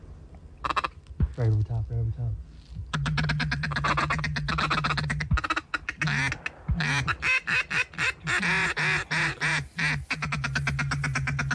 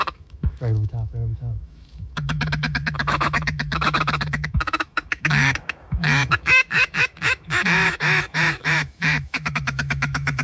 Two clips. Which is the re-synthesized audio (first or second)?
second